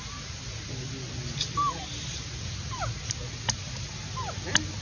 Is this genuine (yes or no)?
yes